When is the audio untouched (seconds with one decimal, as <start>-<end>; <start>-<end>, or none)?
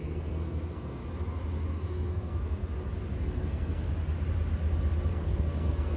1.0-1.7; 2.6-3.2; 3.9-5.1